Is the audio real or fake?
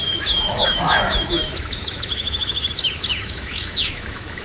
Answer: fake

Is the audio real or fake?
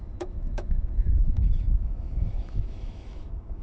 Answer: fake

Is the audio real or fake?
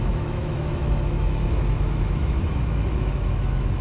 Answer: fake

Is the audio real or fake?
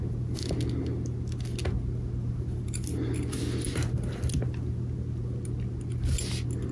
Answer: real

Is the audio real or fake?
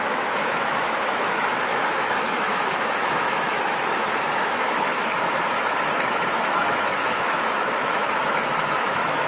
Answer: fake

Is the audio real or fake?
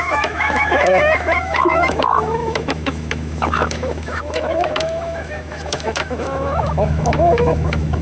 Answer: fake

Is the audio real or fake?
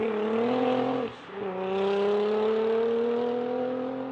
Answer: real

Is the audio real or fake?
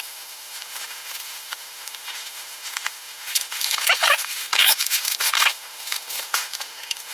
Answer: fake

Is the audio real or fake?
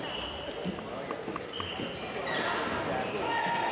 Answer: real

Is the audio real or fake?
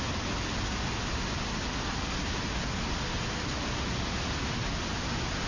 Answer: real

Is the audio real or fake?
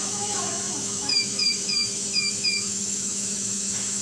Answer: fake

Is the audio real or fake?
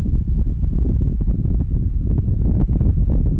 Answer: fake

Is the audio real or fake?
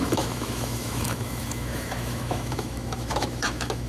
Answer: fake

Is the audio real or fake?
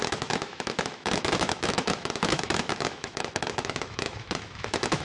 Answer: fake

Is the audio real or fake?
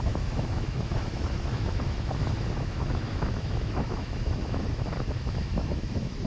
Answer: fake